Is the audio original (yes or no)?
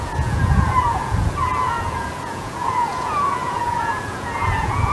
no